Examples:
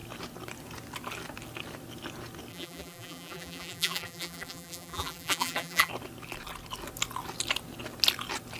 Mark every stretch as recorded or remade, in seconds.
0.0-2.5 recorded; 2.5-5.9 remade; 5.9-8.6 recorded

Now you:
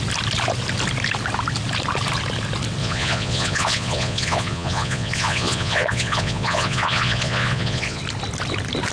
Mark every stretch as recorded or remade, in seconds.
0.0-2.8 recorded; 2.8-8.0 remade; 8.0-8.9 recorded

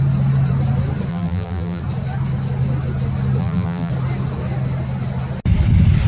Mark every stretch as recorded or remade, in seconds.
0.0-1.1 recorded; 1.1-1.8 remade; 1.8-3.4 recorded; 3.4-3.9 remade; 3.9-6.1 recorded

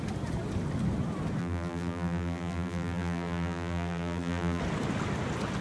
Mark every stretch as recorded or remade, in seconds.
0.0-1.4 recorded; 1.4-4.6 remade; 4.6-5.6 recorded

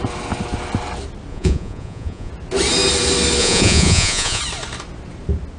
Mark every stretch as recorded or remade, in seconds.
0.0-1.3 recorded; 1.3-2.3 remade; 2.3-3.4 recorded; 3.4-4.4 remade; 4.4-5.6 recorded

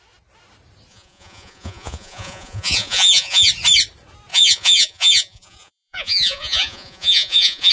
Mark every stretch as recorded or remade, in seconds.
0.0-0.9 recorded; 0.9-3.5 remade; 3.5-4.3 recorded; 4.3-7.7 remade

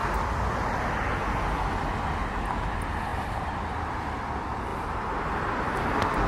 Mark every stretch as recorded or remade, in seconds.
0.0-6.3 recorded